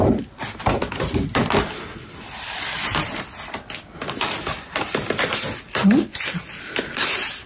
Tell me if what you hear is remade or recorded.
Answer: recorded